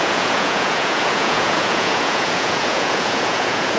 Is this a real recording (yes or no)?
no